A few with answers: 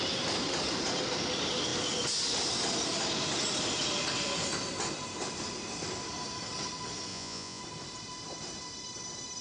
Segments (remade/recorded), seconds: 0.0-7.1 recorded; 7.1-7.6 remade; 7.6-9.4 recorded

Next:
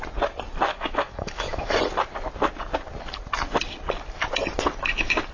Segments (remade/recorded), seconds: 0.0-0.7 recorded; 0.7-1.8 remade; 1.8-5.3 recorded

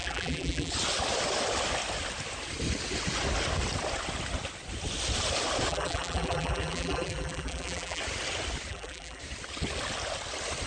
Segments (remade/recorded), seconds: 0.0-0.7 remade; 0.7-5.7 recorded; 5.7-8.0 remade; 8.0-8.7 recorded; 8.7-9.2 remade; 9.2-10.7 recorded

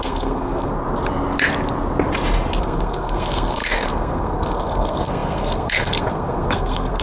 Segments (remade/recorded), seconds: 0.0-0.7 remade; 0.7-2.6 recorded; 2.6-7.0 remade